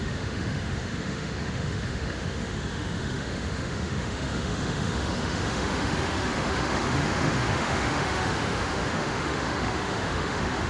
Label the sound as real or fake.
fake